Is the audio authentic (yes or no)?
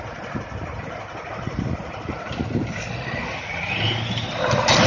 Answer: yes